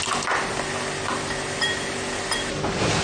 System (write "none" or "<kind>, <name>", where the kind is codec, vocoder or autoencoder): none